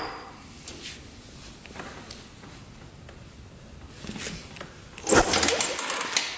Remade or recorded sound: recorded